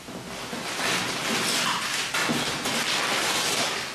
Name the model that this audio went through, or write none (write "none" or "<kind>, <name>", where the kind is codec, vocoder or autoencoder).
none